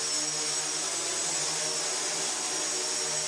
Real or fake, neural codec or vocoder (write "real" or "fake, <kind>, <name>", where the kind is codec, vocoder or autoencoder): real